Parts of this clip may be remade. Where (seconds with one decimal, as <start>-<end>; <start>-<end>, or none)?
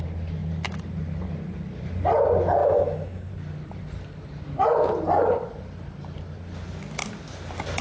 2.6-3.3